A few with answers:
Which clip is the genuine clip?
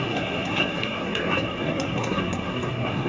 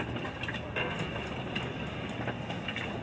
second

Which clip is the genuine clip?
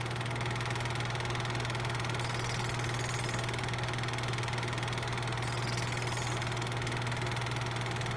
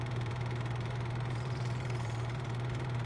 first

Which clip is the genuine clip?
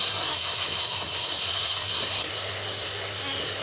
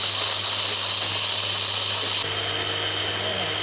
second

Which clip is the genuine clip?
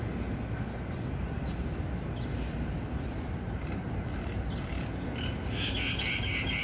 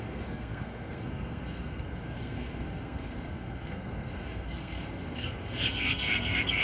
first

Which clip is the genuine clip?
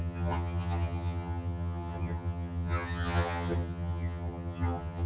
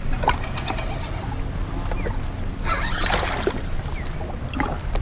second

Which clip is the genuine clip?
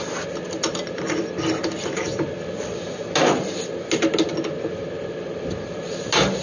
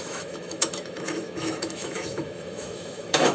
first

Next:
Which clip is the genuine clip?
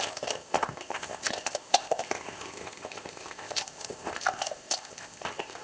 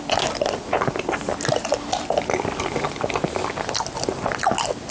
second